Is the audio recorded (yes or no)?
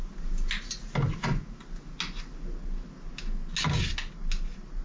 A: yes